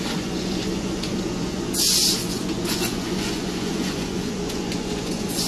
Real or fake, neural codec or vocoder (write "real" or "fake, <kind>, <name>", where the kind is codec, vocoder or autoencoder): fake, vocoder, Vocos